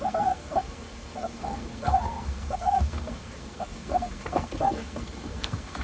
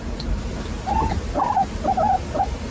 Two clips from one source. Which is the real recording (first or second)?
second